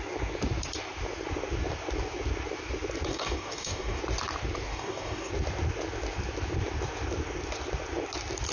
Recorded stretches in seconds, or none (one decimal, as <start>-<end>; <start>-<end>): 0.0-3.1; 4.0-4.7; 5.3-8.5